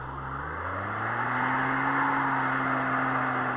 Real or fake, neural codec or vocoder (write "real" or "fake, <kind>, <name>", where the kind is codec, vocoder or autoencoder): real